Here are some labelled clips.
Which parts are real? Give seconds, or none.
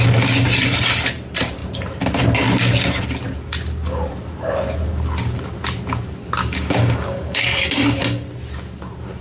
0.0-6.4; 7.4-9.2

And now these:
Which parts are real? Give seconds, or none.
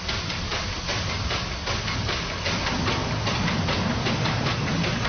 0.0-5.1